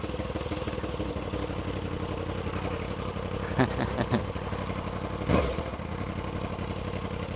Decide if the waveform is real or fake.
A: real